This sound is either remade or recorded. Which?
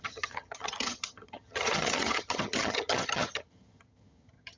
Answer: remade